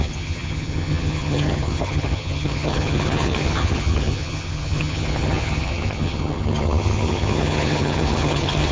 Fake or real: fake